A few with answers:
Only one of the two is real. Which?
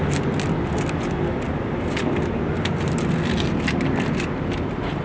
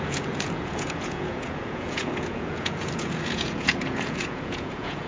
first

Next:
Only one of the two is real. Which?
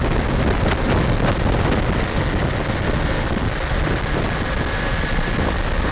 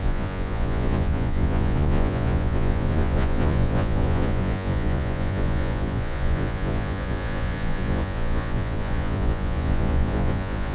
first